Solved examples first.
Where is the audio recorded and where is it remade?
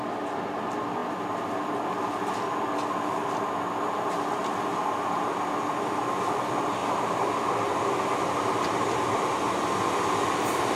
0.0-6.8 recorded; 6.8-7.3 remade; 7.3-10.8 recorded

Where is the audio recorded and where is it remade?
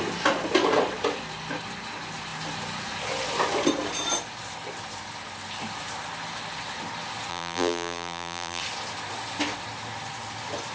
0.0-7.3 recorded; 7.3-8.6 remade; 8.6-10.7 recorded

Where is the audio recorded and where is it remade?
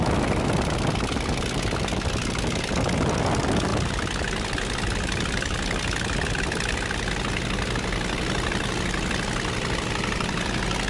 0.0-10.9 recorded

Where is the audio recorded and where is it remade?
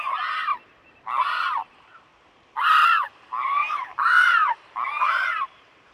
0.0-0.5 remade; 0.5-1.2 recorded; 1.2-2.1 remade; 2.1-3.1 recorded; 3.1-3.6 remade; 3.6-4.2 recorded; 4.2-5.9 remade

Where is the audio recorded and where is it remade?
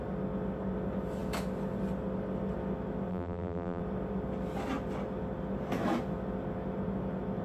0.0-3.1 recorded; 3.1-3.8 remade; 3.8-7.4 recorded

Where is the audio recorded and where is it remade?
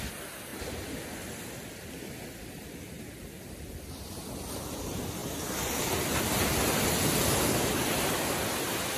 0.0-9.0 recorded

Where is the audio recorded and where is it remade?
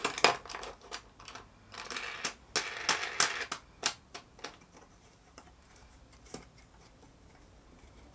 0.0-4.9 recorded; 4.9-8.1 remade